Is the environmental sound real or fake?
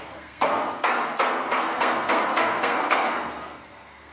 fake